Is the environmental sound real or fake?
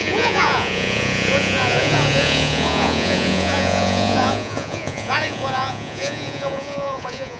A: fake